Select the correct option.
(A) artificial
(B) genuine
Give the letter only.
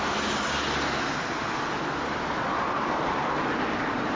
B